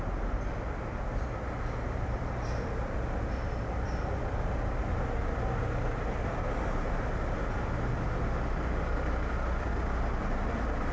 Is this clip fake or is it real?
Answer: real